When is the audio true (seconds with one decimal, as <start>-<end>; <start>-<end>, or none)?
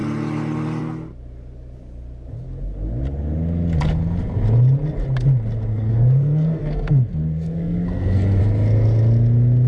0.0-5.7; 8.4-9.7